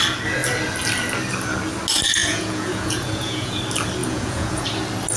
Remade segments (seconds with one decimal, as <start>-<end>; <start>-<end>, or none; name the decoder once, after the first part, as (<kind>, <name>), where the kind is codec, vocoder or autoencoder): 2.2-3.6 (vocoder, Vocos); 4.0-4.6